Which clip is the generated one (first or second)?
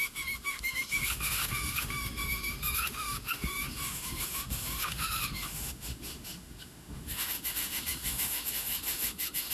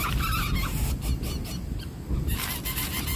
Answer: first